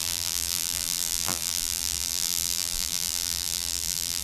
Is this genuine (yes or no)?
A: no